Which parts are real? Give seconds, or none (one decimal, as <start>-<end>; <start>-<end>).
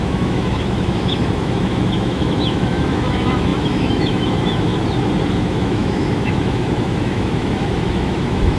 4.7-5.3